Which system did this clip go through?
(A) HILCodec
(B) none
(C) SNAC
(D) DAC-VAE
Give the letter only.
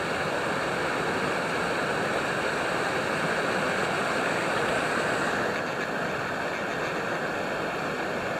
B